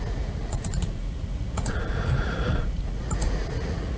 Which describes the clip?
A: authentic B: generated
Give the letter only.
B